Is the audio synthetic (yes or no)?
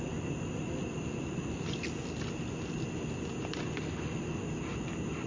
no